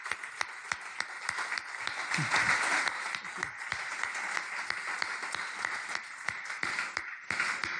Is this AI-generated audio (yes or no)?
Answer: no